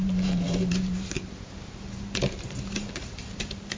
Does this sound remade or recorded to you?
remade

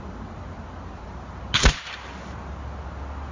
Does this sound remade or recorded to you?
recorded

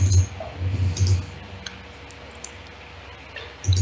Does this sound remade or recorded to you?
recorded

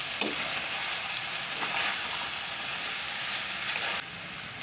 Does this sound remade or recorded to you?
recorded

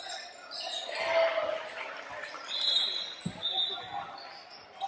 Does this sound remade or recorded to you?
recorded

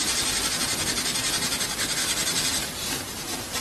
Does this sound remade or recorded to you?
recorded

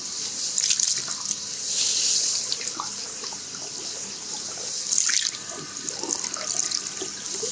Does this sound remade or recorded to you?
recorded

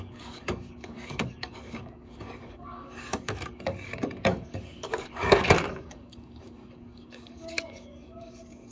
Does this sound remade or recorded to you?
remade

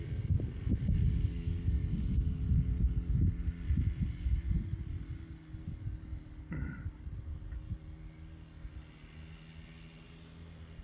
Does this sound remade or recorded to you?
recorded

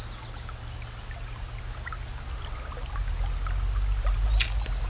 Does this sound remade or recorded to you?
recorded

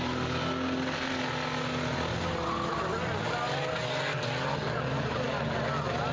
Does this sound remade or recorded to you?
recorded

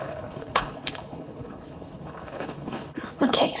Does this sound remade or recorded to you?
remade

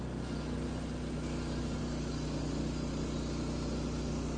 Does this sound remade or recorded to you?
recorded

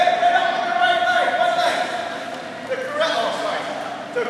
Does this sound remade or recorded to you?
recorded